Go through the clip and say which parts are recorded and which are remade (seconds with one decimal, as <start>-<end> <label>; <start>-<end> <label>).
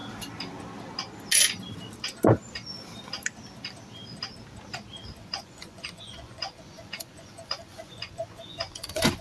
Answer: 0.0-5.2 recorded; 5.2-9.2 remade